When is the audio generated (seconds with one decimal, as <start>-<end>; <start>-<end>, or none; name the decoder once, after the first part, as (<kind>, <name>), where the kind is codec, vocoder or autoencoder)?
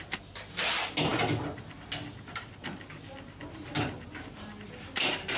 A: none